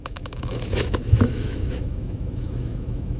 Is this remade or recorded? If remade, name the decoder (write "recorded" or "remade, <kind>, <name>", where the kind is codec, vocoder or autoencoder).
remade, autoencoder, DAC-VAE